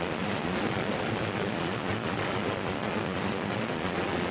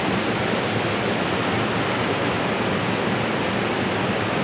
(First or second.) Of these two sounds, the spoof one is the first